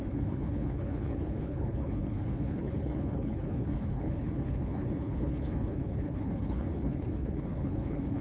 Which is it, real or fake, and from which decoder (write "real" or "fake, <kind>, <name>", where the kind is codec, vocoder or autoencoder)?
fake, codec, HILCodec